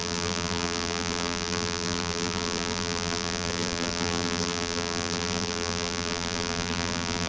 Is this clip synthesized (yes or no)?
yes